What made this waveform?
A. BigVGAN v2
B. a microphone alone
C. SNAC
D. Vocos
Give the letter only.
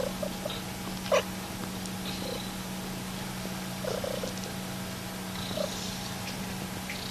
B